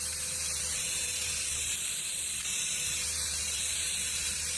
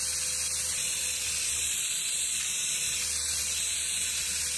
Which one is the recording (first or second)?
second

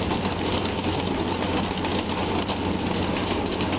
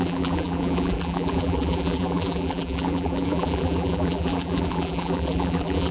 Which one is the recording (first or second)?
first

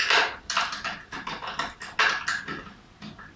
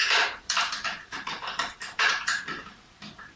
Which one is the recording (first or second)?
first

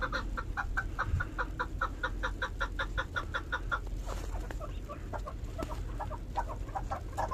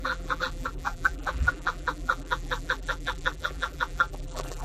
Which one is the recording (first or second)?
first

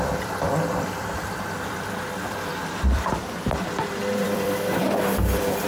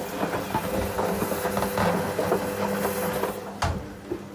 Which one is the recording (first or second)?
second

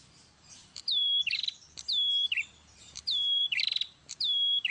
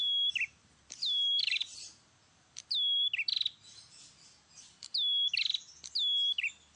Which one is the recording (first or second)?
second